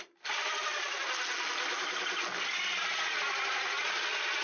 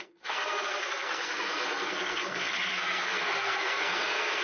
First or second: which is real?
first